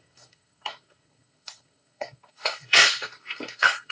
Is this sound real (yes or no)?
no